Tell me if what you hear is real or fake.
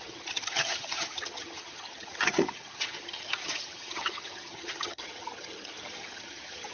fake